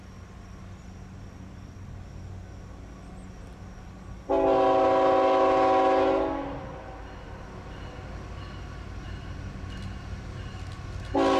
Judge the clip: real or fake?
real